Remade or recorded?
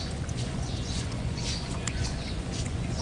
remade